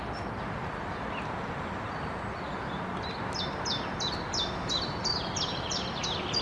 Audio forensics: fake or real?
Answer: real